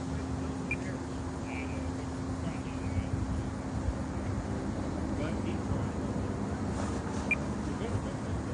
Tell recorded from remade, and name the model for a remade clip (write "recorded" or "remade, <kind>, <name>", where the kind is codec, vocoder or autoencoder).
recorded